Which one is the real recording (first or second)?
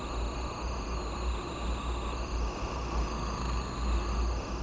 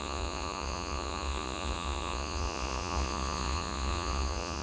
first